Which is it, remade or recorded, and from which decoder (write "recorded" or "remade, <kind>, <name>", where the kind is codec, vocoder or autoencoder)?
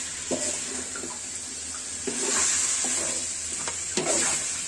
recorded